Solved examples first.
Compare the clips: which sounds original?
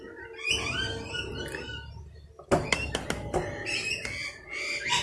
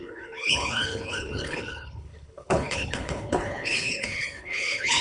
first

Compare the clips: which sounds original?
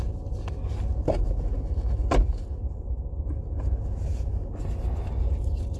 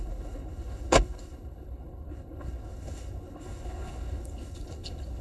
first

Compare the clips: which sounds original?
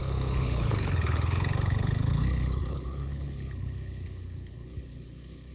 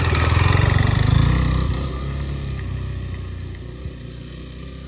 second